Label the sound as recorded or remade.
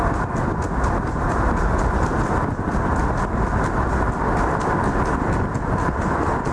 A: recorded